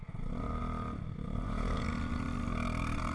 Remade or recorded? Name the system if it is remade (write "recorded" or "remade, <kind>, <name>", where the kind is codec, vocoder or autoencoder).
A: recorded